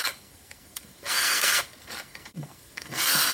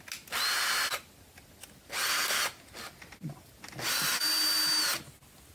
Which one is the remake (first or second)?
first